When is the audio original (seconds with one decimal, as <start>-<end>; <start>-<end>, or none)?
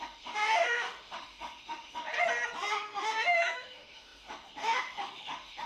2.1-2.7